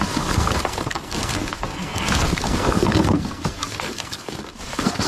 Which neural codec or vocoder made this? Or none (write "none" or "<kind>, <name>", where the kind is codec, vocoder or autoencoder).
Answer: codec, SNAC